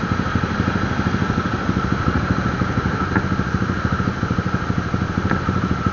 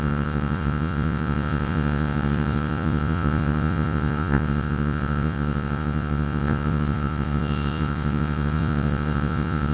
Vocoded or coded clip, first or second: second